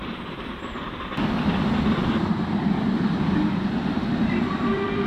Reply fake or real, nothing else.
fake